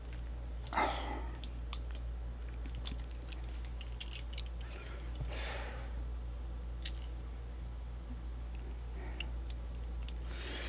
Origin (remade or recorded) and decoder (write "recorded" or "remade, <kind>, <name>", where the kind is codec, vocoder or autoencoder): recorded